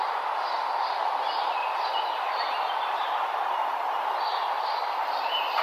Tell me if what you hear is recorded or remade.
recorded